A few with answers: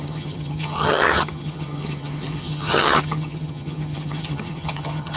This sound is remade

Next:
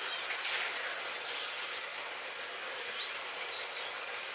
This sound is recorded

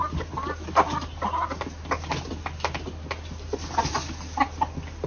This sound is recorded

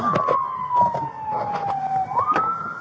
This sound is recorded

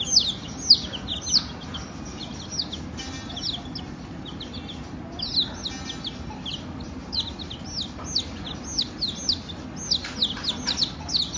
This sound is recorded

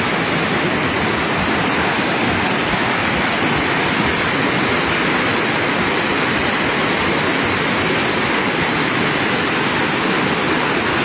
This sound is recorded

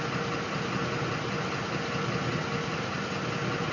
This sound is recorded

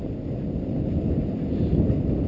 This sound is recorded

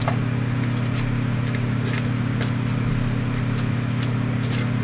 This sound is recorded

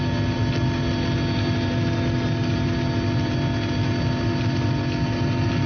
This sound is recorded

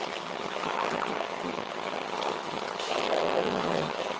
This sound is remade